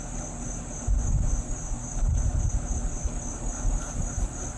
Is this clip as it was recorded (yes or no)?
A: yes